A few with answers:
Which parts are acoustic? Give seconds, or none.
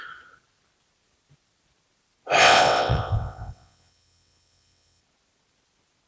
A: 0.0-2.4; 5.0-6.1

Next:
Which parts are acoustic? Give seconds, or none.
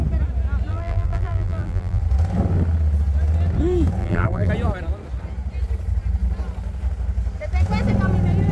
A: 0.0-0.7; 2.0-4.0; 4.5-8.5